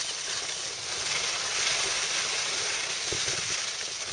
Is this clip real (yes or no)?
yes